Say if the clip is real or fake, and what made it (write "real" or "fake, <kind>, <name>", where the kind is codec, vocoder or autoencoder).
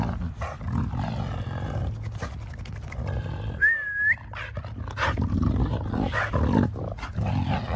real